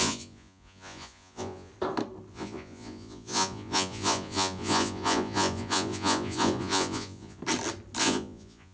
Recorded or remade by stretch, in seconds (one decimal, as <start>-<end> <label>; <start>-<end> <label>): 0.0-1.7 remade; 1.7-2.3 recorded; 2.3-7.4 remade; 7.4-8.0 recorded; 8.0-8.7 remade